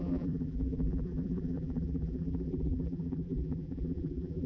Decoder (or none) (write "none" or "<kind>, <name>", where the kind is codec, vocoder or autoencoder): vocoder, BigVGAN v2